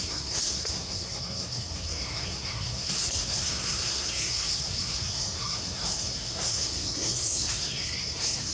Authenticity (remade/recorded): remade